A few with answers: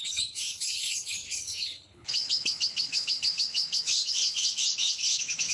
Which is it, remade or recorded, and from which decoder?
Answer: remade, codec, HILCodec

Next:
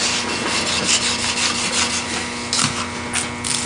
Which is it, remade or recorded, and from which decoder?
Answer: recorded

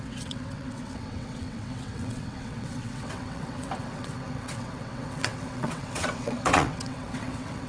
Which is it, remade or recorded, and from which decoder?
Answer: remade, vocoder, WaveNeXt